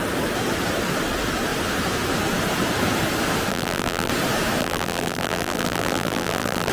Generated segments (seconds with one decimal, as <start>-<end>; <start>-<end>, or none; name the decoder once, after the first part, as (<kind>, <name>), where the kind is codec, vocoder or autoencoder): 3.5-4.1 (vocoder, BigVGAN v2); 4.6-6.7